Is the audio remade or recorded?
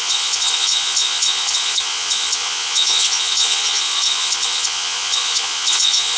remade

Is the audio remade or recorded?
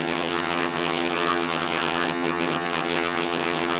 remade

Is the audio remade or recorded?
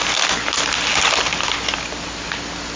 recorded